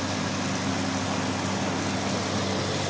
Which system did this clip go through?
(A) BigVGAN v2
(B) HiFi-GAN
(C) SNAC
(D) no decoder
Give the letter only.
D